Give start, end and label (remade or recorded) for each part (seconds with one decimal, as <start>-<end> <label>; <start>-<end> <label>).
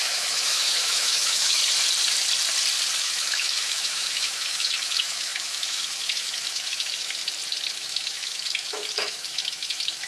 0.0-1.6 remade; 1.6-3.0 recorded; 3.0-7.2 remade; 7.2-7.7 recorded; 7.7-10.1 remade